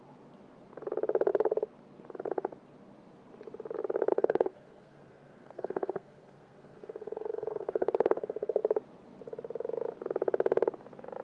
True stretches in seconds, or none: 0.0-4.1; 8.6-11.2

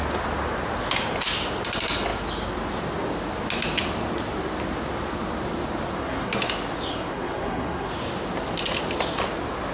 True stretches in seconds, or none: 0.0-6.0; 6.5-6.9; 7.9-9.7

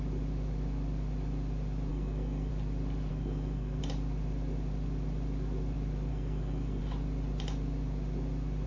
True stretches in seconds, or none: 0.0-1.9; 2.5-3.1; 3.8-6.1; 6.8-8.7

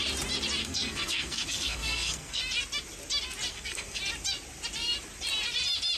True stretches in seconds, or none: 0.0-0.6; 2.4-3.5; 4.0-6.0

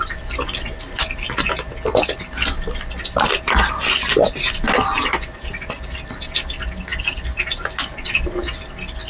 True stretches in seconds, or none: 0.0-9.1

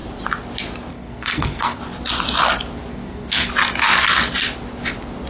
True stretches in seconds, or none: 0.0-0.9; 1.8-2.9; 3.5-5.3